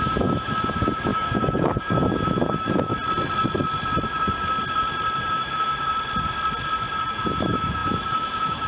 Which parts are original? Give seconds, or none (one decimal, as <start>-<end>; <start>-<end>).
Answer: 2.9-5.3; 5.7-7.1